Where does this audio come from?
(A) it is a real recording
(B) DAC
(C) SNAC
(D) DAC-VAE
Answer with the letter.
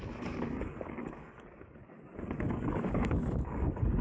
B